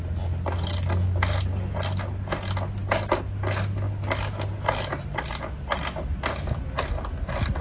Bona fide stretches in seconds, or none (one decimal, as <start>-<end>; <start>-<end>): 0.0-7.6

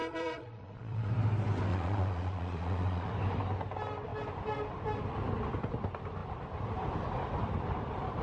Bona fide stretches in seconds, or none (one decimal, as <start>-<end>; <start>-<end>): 1.1-1.7; 3.1-8.2

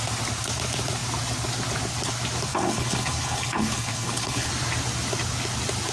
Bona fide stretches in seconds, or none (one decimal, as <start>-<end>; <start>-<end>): 0.0-2.5; 4.5-5.9

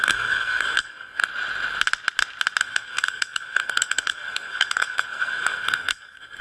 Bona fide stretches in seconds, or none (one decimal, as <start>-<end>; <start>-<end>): 1.2-2.6

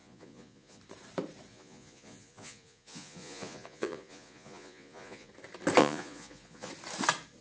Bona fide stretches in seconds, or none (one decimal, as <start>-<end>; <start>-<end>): 0.8-1.5; 5.3-5.8; 6.7-7.4